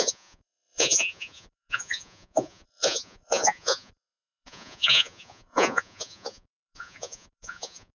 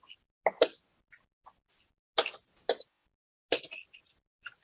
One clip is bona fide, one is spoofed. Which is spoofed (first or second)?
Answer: first